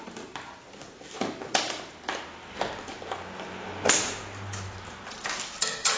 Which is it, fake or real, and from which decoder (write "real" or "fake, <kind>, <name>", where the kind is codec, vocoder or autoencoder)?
real